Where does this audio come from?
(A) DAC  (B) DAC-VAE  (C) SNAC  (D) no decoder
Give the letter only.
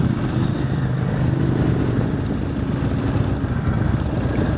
D